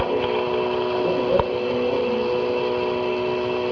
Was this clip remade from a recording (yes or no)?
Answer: no